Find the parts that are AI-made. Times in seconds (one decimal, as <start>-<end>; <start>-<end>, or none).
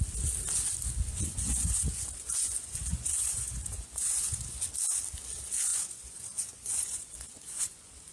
1.1-4.6; 5.7-8.1